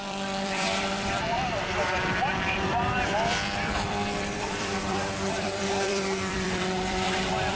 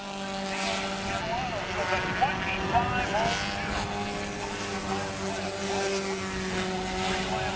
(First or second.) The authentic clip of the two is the second